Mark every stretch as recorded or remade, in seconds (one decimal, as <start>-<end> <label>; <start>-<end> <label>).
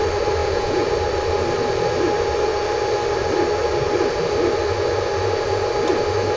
0.0-0.4 recorded; 0.4-0.9 remade; 0.9-6.4 recorded